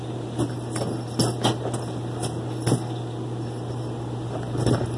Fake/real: real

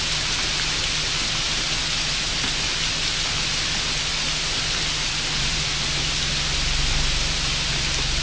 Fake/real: real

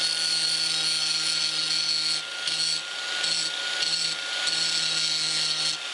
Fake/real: real